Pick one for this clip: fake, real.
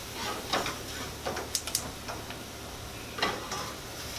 real